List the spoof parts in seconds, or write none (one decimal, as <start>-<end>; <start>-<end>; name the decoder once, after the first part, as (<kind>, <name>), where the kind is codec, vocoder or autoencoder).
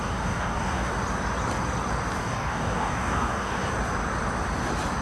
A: 0.0-0.9 (codec, DAC); 2.2-3.7